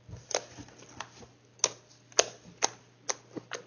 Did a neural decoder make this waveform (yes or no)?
no